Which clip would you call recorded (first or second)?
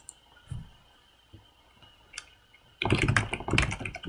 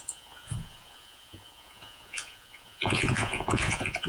first